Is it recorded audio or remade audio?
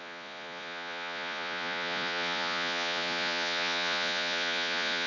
remade